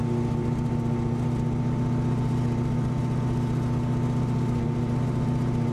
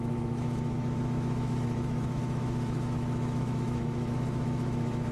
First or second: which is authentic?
first